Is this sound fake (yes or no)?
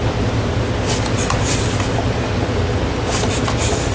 no